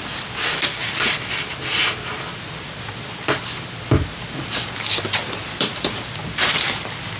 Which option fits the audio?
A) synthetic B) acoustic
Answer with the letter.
B